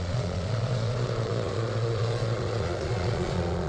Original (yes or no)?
no